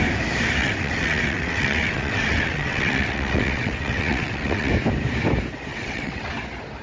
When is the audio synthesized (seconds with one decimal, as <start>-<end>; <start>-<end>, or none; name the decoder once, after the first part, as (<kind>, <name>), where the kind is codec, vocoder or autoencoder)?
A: 0.6-4.7 (vocoder, WaveNeXt); 5.7-6.3